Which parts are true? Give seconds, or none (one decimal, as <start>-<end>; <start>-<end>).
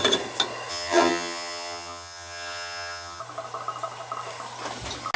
0.0-0.7; 3.2-5.2